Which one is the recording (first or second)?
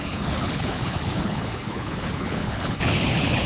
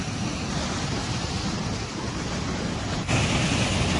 second